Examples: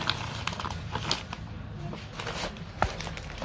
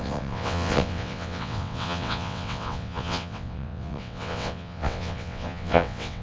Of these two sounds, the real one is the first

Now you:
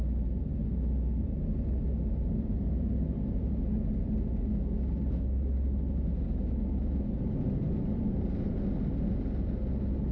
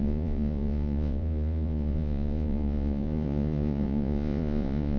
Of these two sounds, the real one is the first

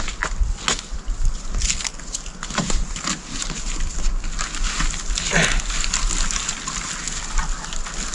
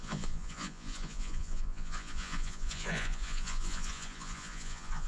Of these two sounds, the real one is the first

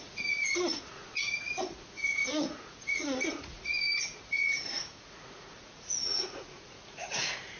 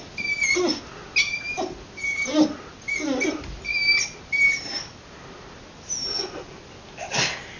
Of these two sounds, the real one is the second